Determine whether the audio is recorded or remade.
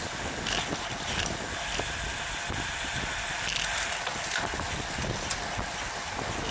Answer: recorded